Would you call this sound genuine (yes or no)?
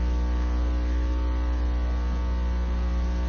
yes